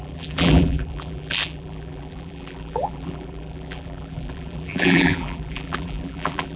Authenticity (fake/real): fake